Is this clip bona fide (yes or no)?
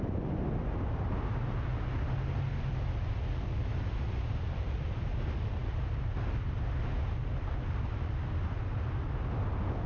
yes